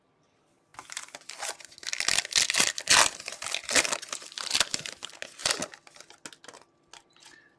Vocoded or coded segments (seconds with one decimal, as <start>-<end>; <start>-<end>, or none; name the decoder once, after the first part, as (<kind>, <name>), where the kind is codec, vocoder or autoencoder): none